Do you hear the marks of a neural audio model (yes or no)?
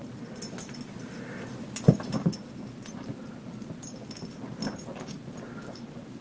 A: no